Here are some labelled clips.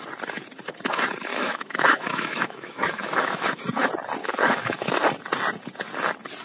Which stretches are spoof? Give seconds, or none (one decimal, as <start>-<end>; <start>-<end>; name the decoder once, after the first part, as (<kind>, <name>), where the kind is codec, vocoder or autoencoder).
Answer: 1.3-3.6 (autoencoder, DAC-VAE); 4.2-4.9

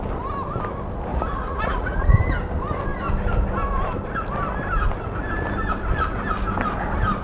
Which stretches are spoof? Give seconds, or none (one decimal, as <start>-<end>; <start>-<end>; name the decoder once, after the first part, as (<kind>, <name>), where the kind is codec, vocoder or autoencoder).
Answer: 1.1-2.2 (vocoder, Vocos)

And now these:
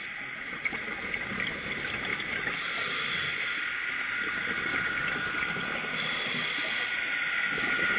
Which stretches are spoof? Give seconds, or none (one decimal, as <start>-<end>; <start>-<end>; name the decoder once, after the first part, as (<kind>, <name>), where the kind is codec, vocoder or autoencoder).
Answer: none

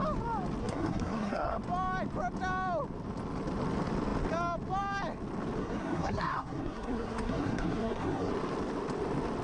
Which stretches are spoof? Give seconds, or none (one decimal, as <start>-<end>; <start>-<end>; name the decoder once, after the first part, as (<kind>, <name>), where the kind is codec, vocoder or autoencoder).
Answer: 0.6-1.6 (codec, SNAC); 5.6-8.3

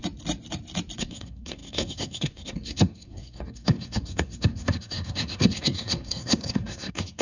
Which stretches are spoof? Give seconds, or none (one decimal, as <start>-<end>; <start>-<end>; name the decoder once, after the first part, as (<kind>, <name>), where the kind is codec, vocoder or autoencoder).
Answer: 1.0-7.2 (codec, SNAC)

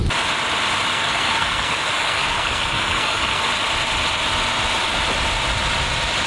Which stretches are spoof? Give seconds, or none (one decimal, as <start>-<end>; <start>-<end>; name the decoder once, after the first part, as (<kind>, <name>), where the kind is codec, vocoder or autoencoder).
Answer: 0.9-3.5 (codec, SNAC)